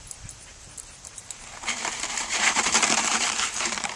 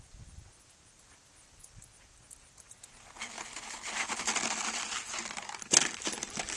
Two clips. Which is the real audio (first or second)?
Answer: second